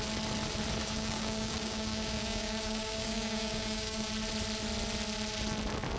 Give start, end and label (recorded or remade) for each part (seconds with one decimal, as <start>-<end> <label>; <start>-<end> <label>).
0.0-0.8 recorded; 0.8-4.1 remade; 4.1-6.0 recorded